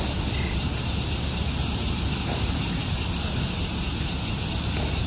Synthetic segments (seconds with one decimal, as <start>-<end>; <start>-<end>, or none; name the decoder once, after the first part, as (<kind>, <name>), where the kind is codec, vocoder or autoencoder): none